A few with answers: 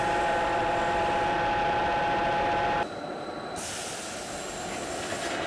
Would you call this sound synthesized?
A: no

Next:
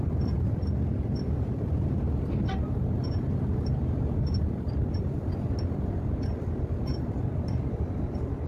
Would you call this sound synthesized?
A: no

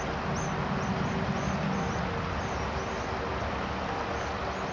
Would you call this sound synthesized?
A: no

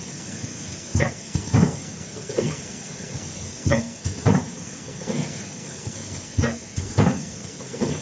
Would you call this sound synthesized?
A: yes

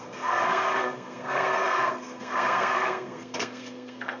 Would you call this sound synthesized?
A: yes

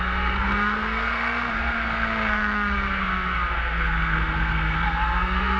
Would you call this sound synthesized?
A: yes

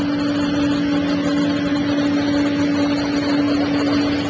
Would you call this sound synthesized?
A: no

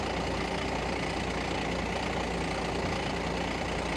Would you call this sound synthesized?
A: no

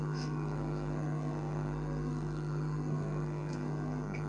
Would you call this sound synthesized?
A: yes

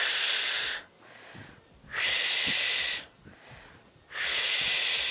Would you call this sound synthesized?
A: no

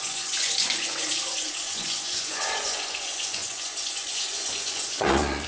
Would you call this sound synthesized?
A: yes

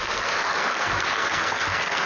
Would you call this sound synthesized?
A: yes